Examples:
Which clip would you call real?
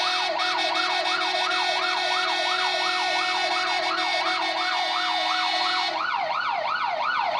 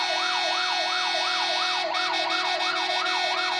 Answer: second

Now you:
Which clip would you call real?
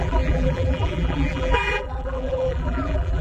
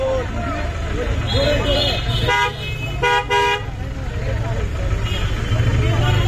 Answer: second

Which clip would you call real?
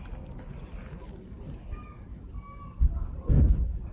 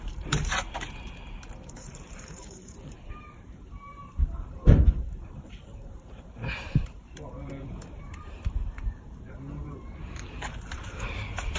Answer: first